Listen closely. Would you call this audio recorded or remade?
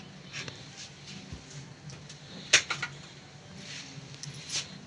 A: recorded